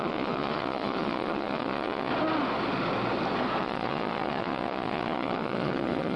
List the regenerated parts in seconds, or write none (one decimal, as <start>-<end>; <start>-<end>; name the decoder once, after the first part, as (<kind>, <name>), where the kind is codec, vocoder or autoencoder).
0.0-2.1 (vocoder, Vocos); 3.6-6.2